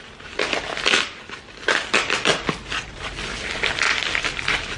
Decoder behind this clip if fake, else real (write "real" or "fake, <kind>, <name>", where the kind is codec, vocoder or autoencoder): real